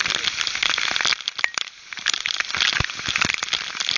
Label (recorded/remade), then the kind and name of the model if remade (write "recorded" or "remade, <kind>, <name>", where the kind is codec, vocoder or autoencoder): recorded